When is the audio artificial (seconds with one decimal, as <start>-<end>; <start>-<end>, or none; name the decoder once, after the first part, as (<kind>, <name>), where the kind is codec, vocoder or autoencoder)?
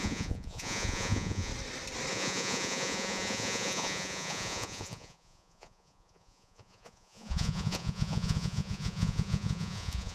0.0-1.5 (vocoder, Vocos); 2.1-10.1